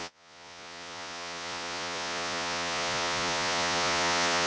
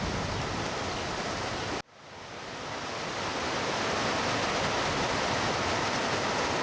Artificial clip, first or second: first